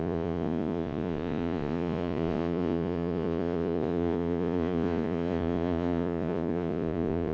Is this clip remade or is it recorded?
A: remade